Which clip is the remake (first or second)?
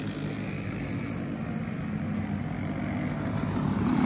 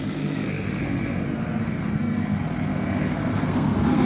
second